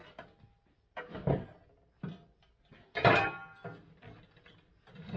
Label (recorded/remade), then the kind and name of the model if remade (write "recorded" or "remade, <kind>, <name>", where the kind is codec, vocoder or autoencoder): recorded